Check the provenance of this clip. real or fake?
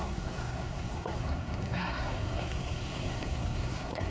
fake